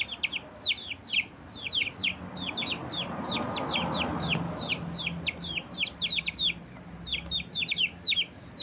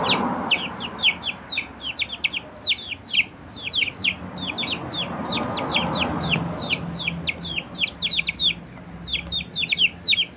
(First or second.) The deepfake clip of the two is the first